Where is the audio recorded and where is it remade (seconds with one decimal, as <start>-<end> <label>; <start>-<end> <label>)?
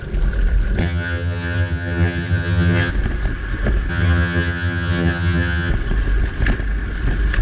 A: 0.0-0.8 recorded; 0.8-2.9 remade; 2.9-3.9 recorded; 3.9-5.7 remade; 5.7-7.4 recorded